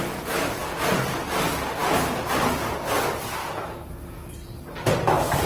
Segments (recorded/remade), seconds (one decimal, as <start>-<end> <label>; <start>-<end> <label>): 0.0-3.4 recorded; 3.4-4.3 remade; 4.3-5.5 recorded